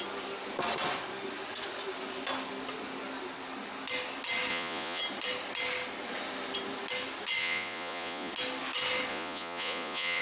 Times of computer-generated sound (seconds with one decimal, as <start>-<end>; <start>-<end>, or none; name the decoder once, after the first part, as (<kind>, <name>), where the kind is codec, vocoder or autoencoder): 4.5-5.0 (vocoder, Vocos); 7.4-8.3; 9.1-10.2